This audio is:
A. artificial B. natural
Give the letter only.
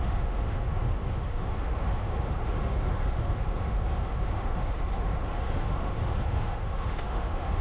A